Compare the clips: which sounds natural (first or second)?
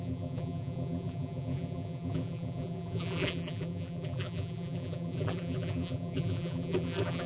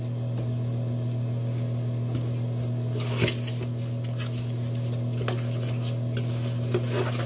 second